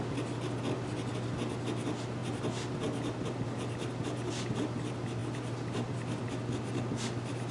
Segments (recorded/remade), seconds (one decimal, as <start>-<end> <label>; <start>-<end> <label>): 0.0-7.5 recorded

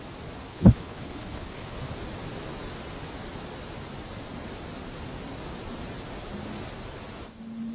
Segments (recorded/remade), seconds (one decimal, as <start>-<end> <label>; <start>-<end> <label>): 0.0-0.5 recorded; 0.5-1.8 remade; 1.8-7.7 recorded

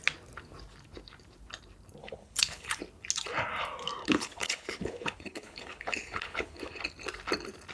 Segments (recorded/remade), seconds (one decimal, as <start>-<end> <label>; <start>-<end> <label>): 0.0-2.0 recorded; 2.0-2.8 remade; 2.8-4.0 recorded; 4.0-6.8 remade; 6.8-7.7 recorded

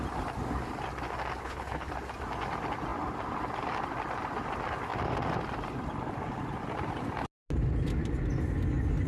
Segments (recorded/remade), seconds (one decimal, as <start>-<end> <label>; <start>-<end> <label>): 0.0-1.4 recorded; 1.4-1.9 remade; 1.9-9.1 recorded

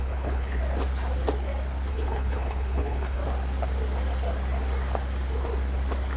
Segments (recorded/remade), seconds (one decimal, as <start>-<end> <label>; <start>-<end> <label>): 0.0-0.6 remade; 0.6-1.9 recorded; 1.9-3.2 remade; 3.2-6.2 recorded

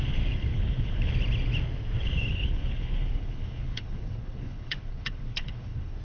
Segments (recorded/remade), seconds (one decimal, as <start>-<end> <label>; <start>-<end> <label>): 0.0-0.5 recorded; 0.5-1.1 remade; 1.1-2.3 recorded; 2.3-6.0 remade

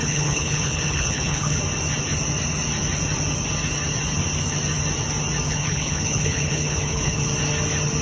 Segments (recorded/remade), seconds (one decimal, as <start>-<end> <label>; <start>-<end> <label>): 0.0-1.6 remade; 1.6-5.5 recorded; 5.5-7.3 remade; 7.3-8.0 recorded

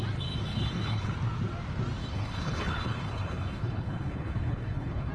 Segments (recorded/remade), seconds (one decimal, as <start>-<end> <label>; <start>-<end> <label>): 0.0-0.5 recorded; 0.5-1.1 remade; 1.1-2.0 recorded; 2.0-5.1 remade